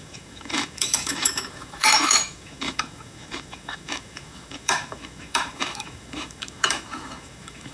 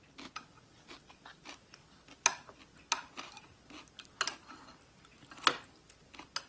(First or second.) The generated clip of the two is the first